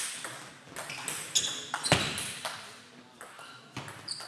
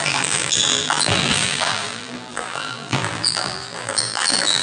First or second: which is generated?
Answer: second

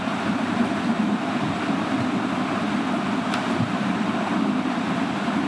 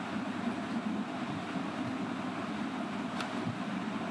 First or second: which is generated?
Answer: first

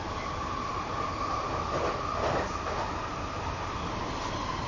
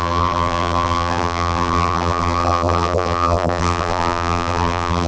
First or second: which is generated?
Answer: second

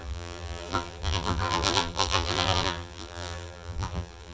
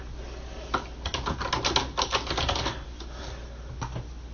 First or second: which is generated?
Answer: first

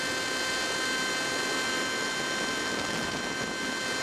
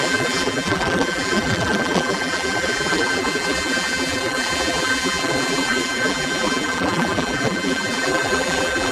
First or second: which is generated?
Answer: second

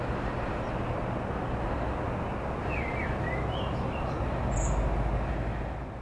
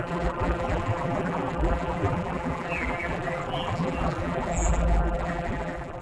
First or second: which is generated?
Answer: second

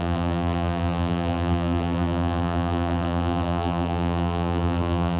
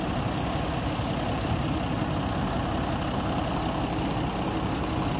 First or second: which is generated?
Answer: first